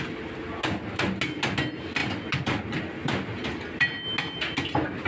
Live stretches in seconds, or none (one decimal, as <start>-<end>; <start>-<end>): 0.0-5.1